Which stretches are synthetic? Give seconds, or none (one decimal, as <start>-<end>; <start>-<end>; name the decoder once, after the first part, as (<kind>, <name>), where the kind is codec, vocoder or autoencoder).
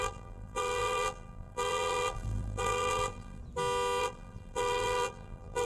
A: 0.0-3.4 (vocoder, BigVGAN v2); 4.0-5.6